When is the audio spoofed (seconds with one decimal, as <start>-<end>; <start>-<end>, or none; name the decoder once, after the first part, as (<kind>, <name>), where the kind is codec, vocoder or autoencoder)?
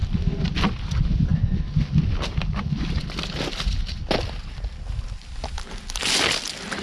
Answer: none